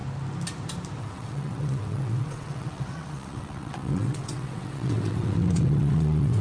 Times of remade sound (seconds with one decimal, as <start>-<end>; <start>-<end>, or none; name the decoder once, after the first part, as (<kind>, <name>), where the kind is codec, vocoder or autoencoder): 1.0-6.4 (vocoder, WaveNeXt)

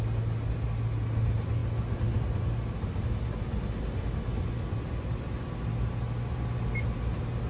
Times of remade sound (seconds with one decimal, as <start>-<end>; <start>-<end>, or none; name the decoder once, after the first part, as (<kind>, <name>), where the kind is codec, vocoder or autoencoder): none

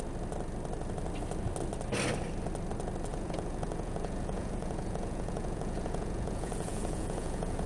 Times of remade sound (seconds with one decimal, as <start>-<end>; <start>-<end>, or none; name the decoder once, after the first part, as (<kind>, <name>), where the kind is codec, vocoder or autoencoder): 3.1-7.7 (vocoder, Vocos)

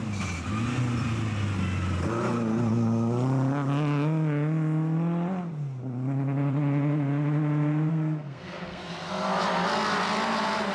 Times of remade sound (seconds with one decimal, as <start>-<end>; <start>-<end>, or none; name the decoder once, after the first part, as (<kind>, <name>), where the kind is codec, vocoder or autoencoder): 7.9-8.9 (codec, SNAC)